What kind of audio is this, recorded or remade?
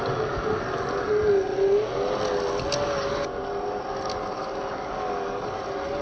recorded